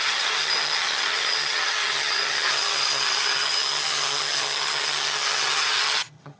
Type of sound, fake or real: fake